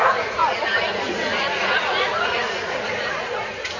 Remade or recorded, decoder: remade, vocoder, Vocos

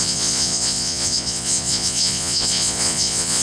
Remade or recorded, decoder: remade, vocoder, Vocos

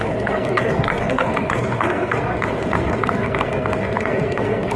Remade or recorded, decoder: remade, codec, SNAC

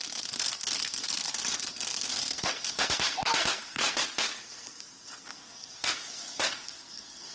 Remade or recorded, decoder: remade, codec, SNAC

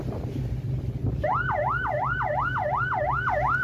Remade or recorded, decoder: recorded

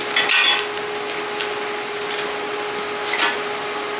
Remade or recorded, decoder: recorded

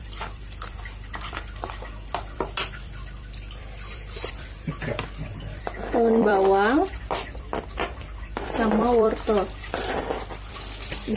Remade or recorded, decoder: remade, vocoder, BigVGAN v2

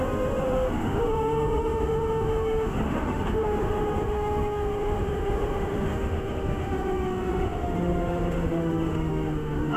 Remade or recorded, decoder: remade, autoencoder, DAC-VAE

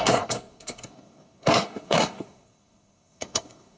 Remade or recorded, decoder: remade, codec, SNAC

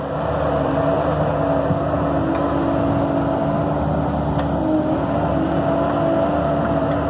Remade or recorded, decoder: recorded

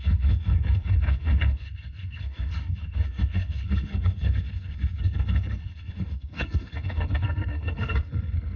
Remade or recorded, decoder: remade, codec, SNAC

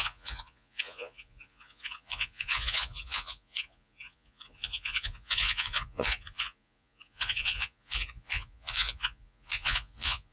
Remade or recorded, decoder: remade, vocoder, Vocos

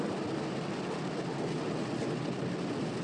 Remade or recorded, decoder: recorded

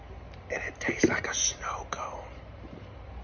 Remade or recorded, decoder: remade, vocoder, BigVGAN v2